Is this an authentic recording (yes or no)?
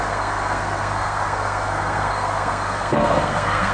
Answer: no